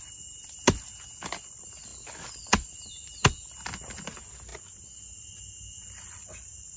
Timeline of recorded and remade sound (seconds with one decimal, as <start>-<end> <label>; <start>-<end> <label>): 0.0-6.8 recorded